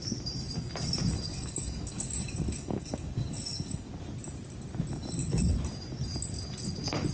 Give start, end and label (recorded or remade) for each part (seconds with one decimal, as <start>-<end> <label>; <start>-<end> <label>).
0.0-1.3 recorded; 1.3-3.9 remade; 3.9-7.1 recorded